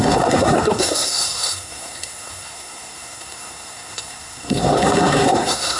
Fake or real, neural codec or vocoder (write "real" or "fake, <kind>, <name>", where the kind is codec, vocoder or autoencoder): fake, codec, SNAC